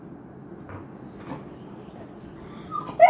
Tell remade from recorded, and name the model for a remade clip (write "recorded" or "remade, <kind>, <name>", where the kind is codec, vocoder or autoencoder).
recorded